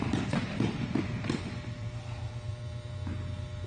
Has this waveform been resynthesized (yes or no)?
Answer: yes